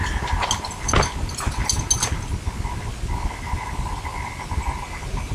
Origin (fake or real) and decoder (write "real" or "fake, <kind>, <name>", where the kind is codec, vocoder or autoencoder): real